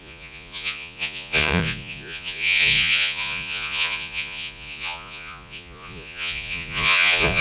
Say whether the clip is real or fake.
fake